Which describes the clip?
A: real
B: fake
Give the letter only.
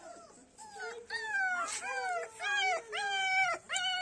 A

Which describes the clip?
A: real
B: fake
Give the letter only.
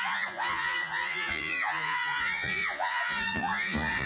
B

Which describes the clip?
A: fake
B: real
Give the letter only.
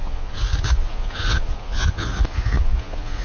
A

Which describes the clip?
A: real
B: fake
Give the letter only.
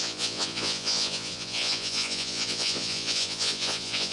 B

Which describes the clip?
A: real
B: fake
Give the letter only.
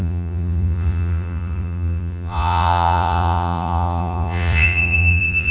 B